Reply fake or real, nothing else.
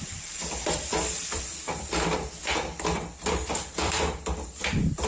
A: fake